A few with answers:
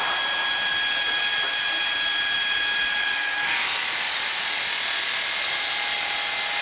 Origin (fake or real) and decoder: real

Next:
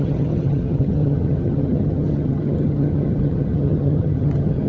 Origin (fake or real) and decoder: fake, vocoder, HiFi-GAN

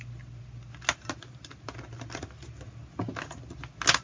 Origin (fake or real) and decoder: real